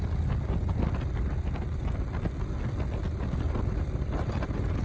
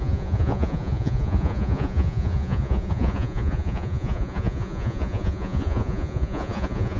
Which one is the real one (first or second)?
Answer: first